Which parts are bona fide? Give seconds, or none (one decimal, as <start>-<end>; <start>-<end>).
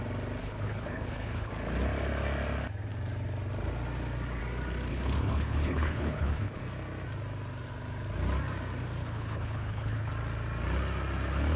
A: 0.0-0.4; 1.5-4.9; 6.6-9.0; 10.1-11.6